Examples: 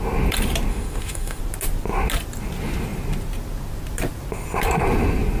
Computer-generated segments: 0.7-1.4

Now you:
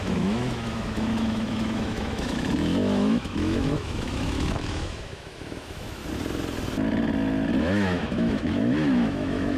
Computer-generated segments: 0.0-6.0; 7.6-9.6

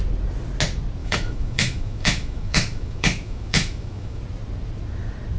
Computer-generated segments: 1.0-4.2